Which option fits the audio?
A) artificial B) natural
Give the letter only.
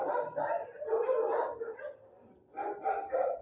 B